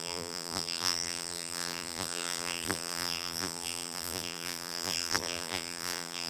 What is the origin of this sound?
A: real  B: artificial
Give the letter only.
B